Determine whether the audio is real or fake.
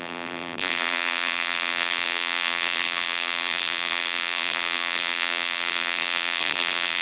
fake